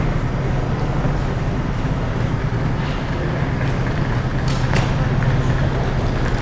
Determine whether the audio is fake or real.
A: real